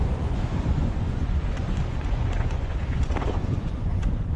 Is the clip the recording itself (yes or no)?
no